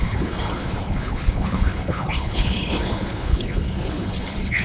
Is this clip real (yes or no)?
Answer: no